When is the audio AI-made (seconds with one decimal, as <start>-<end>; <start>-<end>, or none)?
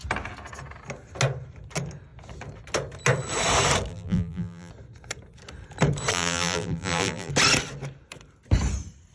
3.9-4.7; 6.1-7.3